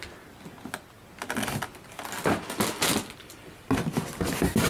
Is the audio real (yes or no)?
yes